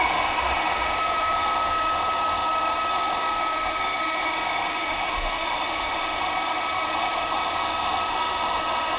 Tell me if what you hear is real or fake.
fake